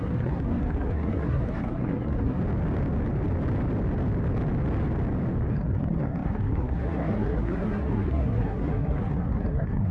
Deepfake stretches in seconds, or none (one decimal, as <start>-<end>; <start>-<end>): 0.0-2.4; 5.5-9.9